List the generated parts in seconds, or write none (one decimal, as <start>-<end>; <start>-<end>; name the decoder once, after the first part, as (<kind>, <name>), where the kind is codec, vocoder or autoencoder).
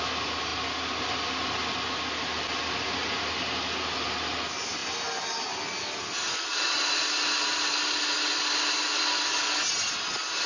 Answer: none